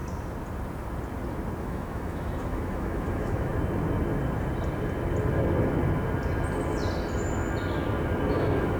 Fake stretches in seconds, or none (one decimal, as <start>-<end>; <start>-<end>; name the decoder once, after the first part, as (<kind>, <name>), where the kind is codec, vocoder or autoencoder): 1.6-3.5 (autoencoder, DAC-VAE); 8.3-8.8